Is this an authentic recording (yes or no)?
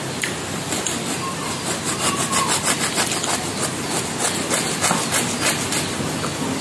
yes